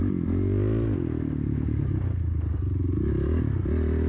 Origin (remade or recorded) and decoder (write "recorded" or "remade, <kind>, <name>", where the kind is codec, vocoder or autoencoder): recorded